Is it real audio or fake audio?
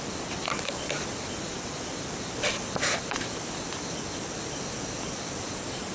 fake